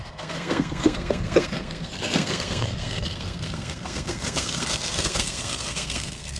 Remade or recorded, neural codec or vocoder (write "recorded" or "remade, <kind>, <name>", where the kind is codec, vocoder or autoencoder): remade, codec, SNAC